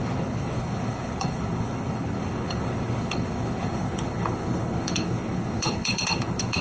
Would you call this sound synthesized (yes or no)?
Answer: yes